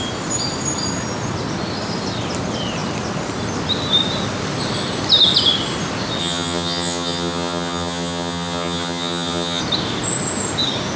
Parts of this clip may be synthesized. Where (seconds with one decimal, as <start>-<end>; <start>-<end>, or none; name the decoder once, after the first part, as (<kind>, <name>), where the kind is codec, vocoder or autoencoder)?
6.2-9.6 (vocoder, HiFi-GAN)